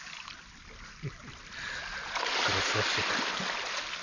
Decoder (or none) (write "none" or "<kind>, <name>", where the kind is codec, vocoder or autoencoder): none